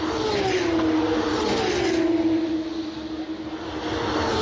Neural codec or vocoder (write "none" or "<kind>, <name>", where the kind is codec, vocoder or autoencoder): none